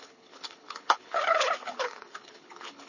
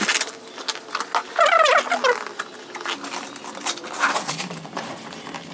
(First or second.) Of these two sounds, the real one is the second